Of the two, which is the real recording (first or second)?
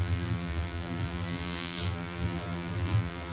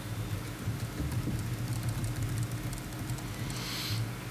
second